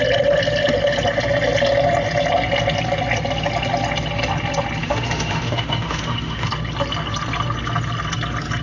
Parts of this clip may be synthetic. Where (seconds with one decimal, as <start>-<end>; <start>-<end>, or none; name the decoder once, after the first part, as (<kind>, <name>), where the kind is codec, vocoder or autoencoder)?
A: 4.8-6.5 (autoencoder, DAC-VAE)